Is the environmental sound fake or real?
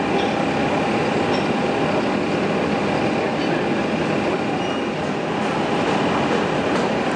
real